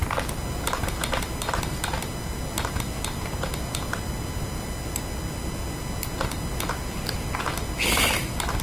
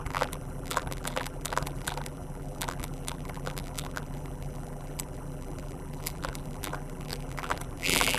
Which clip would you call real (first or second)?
first